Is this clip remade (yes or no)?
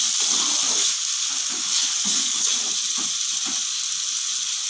no